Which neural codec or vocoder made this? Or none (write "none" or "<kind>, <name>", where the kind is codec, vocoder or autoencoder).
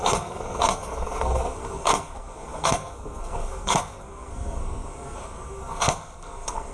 codec, SNAC